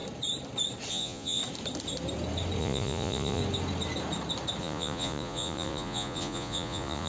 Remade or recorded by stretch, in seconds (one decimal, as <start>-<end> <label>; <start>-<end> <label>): 0.0-0.9 recorded; 0.9-1.4 remade; 1.4-2.6 recorded; 2.6-3.4 remade; 3.4-4.6 recorded; 4.6-7.1 remade